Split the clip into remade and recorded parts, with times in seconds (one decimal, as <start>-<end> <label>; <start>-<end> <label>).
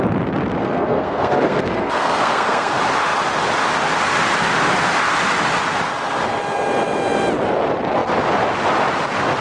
0.0-0.6 recorded; 0.6-2.7 remade; 2.7-9.4 recorded